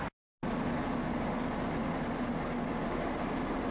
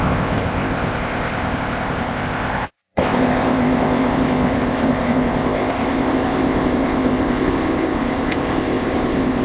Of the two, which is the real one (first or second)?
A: first